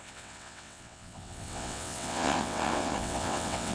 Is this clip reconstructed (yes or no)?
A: yes